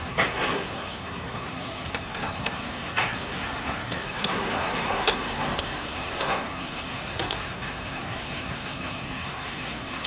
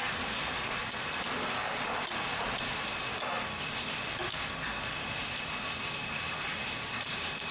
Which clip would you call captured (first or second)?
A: second